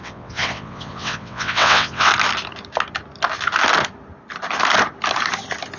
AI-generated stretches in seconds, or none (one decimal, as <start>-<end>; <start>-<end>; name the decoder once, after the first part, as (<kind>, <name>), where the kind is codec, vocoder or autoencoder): 0.0-2.1 (vocoder, WaveNeXt)